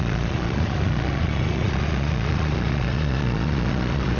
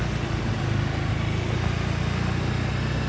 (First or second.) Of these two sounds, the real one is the second